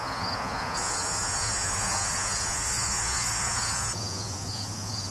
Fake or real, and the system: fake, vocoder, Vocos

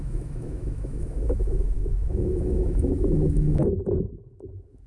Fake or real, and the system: fake, autoencoder, DAC-VAE